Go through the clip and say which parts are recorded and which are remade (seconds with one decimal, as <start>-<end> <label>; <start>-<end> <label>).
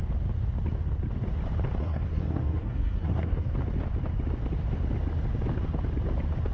0.0-1.8 recorded; 1.8-3.5 remade; 3.5-6.5 recorded